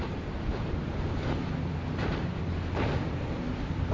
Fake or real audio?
real